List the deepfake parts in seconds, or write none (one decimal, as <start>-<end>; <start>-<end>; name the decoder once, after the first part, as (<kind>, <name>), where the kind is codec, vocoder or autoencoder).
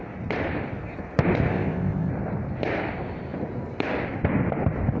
1.5-2.1 (codec, ZipCodec)